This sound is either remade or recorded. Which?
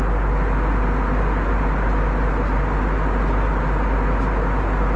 recorded